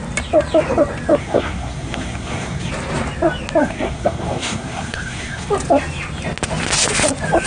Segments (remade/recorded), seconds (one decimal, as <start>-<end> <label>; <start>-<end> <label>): 0.0-1.2 recorded; 1.2-2.7 remade; 2.7-3.6 recorded; 3.6-5.5 remade; 5.5-7.5 recorded